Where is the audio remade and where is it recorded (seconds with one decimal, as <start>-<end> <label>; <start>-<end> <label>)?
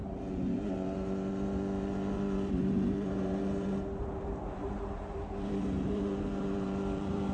0.0-7.3 remade